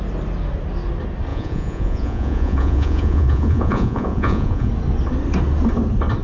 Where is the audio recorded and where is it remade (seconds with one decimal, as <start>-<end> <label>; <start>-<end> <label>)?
0.0-1.3 recorded; 1.3-4.7 remade; 4.7-6.2 recorded